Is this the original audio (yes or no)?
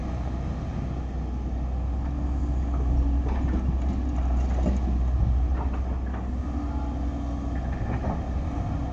yes